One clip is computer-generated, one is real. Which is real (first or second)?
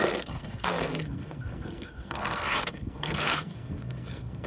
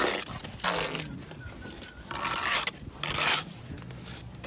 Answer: second